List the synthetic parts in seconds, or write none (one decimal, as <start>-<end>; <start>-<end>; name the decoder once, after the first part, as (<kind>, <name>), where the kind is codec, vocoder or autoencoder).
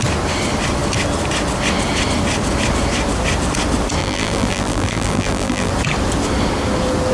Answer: 4.0-5.7 (vocoder, BigVGAN v2)